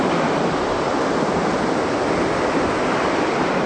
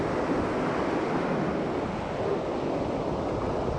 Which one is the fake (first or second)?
first